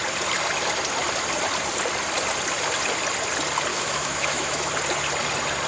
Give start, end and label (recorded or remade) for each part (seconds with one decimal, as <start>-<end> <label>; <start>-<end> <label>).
0.0-3.7 recorded; 3.7-4.7 remade; 4.7-5.7 recorded